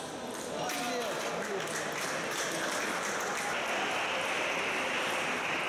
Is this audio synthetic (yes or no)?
no